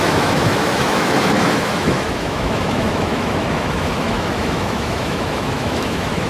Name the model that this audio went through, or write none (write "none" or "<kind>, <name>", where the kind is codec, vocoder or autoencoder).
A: autoencoder, DAC-VAE